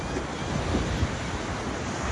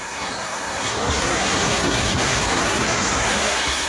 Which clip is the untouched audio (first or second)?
first